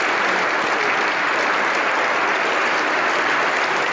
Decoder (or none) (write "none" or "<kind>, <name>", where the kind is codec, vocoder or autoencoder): none